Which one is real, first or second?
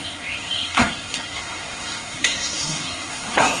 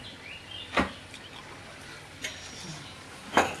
second